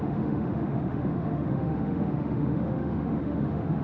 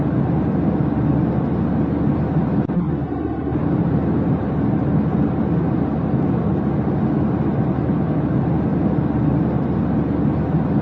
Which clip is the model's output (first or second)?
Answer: first